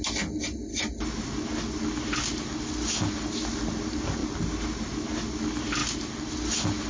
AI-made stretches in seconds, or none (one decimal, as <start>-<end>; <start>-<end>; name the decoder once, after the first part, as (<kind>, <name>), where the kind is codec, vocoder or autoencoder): none